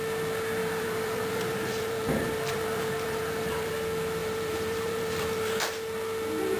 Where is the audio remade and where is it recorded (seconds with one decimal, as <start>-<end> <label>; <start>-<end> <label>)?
0.0-0.6 recorded; 0.6-3.7 remade; 3.7-4.2 recorded; 4.2-5.6 remade; 5.6-6.6 recorded